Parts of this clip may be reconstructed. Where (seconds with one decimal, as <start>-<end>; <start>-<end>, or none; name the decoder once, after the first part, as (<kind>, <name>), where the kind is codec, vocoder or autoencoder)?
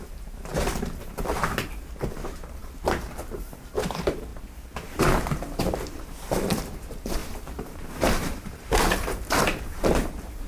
0.0-10.5 (vocoder, BigVGAN v2)